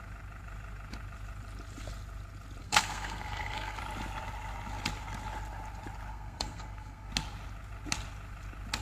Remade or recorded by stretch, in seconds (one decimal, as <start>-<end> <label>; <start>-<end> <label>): 0.0-2.6 recorded; 2.6-3.8 remade; 3.8-6.1 recorded; 6.1-7.1 remade; 7.1-8.8 recorded